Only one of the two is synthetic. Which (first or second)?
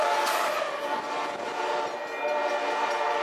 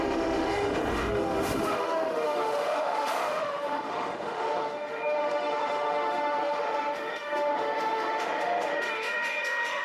second